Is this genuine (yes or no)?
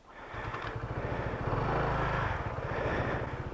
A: yes